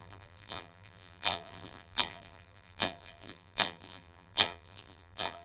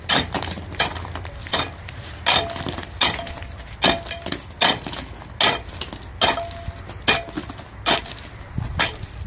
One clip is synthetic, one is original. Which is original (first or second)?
second